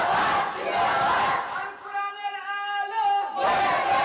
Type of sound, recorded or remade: recorded